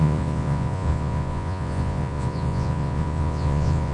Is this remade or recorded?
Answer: remade